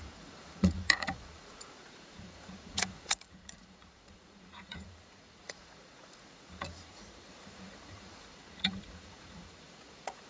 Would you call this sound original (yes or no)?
no